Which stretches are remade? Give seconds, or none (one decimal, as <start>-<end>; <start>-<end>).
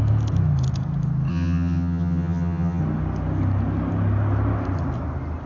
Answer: 1.3-2.8